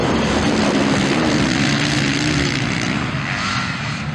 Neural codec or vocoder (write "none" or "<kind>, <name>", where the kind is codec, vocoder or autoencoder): vocoder, BigVGAN v2